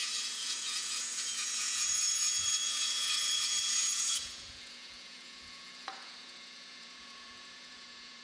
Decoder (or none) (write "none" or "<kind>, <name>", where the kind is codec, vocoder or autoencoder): vocoder, Vocos